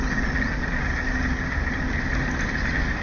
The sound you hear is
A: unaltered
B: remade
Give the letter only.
A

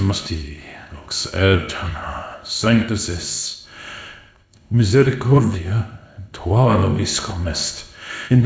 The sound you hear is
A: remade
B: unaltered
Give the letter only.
A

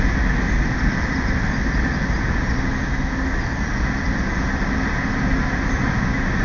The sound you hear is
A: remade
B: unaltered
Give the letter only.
B